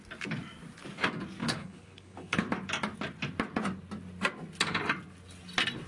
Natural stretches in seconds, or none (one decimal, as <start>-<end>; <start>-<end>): 0.0-1.4; 2.4-5.9